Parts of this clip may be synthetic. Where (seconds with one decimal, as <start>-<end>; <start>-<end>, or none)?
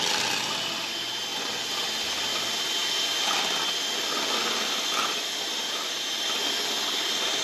none